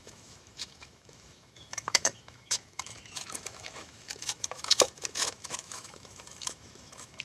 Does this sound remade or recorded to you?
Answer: remade